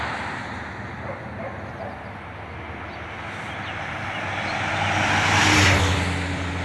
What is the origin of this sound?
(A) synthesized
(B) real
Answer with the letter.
B